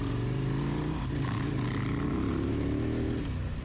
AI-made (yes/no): no